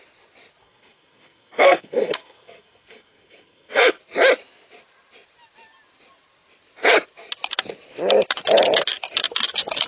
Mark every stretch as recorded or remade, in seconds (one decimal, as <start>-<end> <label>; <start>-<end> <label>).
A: 0.0-0.6 recorded; 0.6-4.0 remade; 4.0-9.9 recorded

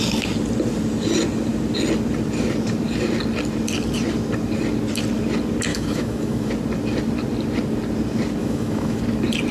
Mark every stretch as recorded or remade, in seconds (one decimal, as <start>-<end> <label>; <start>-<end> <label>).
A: 0.0-5.7 recorded; 5.7-6.5 remade; 6.5-8.4 recorded; 8.4-9.0 remade; 9.0-9.5 recorded

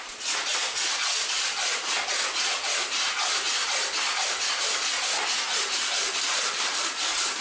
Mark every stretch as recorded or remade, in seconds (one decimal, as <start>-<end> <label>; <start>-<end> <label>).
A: 0.0-0.5 remade; 0.5-1.2 recorded; 1.2-2.0 remade; 2.0-5.8 recorded; 5.8-7.4 remade

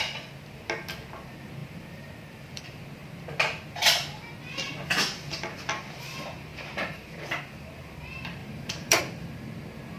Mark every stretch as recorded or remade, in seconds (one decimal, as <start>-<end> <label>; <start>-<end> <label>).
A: 0.0-1.6 recorded; 1.6-2.6 remade; 2.6-8.4 recorded; 8.4-9.0 remade; 9.0-10.0 recorded

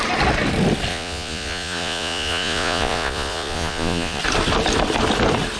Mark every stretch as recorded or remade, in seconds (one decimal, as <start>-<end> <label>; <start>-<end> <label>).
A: 0.0-0.9 recorded; 0.9-4.2 remade; 4.2-5.6 recorded

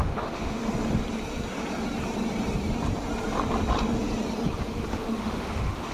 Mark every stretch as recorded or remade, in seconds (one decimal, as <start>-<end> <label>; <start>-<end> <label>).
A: 0.0-0.6 remade; 0.6-4.9 recorded; 4.9-5.9 remade

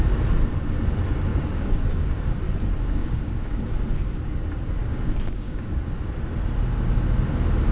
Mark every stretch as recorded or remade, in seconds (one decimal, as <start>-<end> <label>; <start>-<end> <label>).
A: 0.0-1.3 recorded; 1.3-2.4 remade; 2.4-3.0 recorded; 3.0-3.7 remade; 3.7-4.9 recorded; 4.9-5.8 remade; 5.8-7.7 recorded

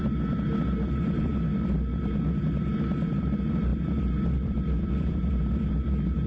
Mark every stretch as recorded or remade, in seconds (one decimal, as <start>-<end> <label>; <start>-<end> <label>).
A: 0.0-0.6 recorded; 0.6-1.3 remade; 1.3-3.1 recorded; 3.1-6.3 remade